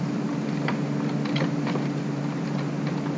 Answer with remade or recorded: recorded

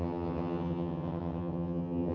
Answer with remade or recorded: remade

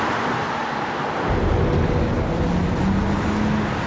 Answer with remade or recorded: recorded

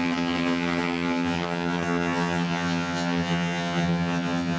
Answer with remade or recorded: remade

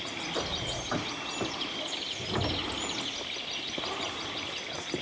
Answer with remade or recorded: recorded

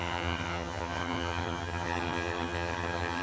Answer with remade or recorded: remade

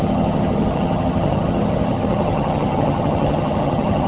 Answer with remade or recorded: remade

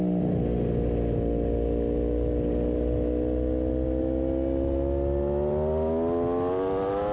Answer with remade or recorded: recorded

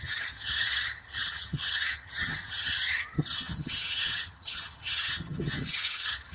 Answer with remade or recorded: remade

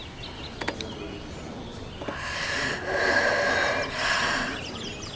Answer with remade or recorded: recorded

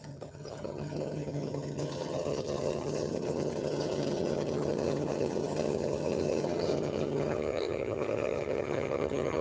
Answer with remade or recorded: remade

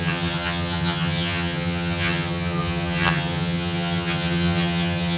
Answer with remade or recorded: remade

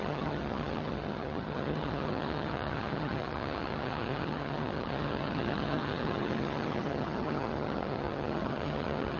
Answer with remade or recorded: remade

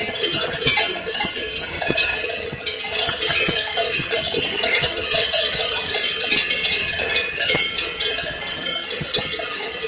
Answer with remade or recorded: remade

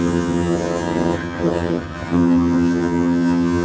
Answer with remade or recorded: remade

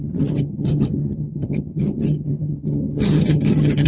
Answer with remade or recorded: remade